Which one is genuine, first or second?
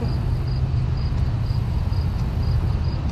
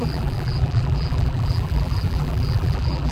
first